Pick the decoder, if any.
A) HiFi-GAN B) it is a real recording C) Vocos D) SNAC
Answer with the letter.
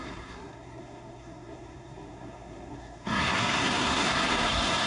D